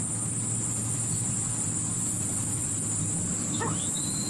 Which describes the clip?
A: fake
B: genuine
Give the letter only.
B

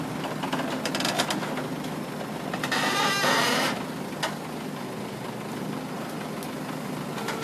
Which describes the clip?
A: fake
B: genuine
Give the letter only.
B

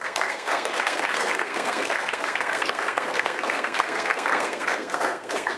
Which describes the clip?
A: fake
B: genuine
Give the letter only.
A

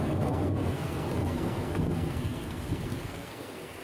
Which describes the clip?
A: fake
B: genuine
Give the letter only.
A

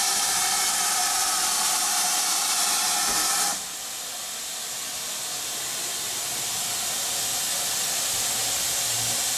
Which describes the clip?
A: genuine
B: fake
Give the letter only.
A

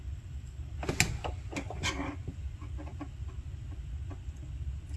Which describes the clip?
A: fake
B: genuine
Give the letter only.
B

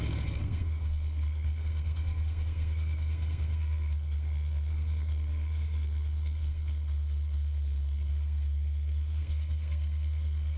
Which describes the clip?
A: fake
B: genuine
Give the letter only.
A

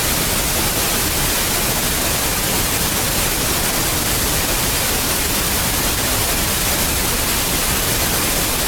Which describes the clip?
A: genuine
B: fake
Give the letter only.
A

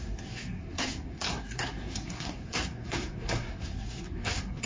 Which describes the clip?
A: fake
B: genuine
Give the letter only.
A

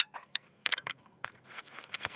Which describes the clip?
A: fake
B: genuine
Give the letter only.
A